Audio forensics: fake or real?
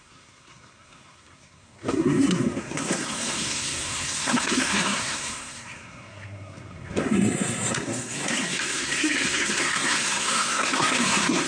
fake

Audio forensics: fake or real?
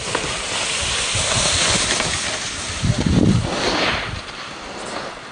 real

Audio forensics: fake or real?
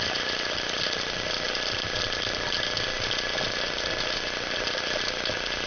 real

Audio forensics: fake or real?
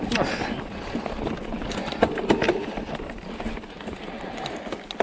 real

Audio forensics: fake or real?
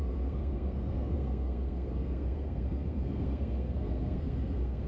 fake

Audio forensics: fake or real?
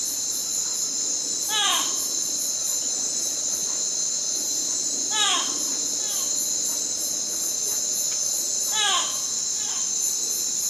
real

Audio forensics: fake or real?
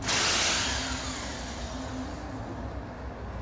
real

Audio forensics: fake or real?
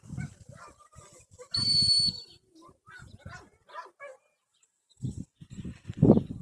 fake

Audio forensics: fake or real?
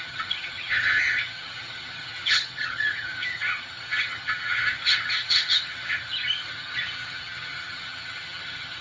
fake